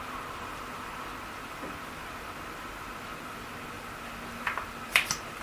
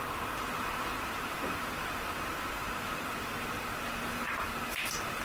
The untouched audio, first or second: first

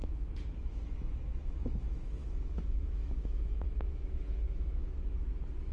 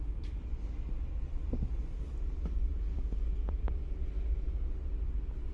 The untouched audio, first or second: second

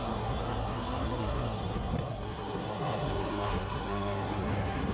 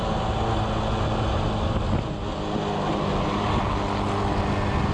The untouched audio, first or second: second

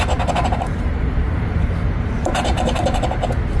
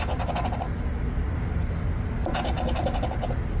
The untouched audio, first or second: second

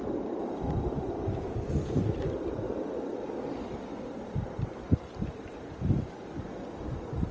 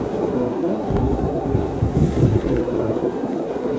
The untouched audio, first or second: first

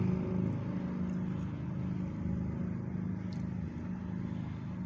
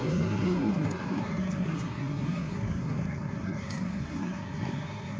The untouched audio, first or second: first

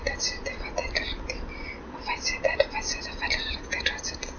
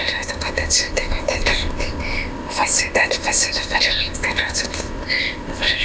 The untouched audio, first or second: first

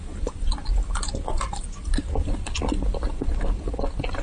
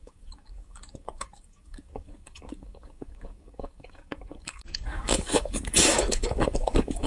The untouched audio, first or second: first